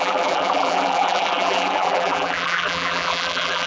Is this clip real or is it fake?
fake